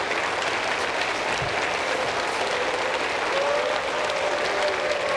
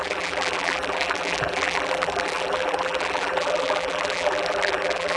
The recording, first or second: first